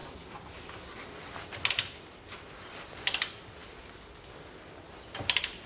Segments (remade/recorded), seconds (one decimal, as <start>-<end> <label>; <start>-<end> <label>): 0.0-5.7 recorded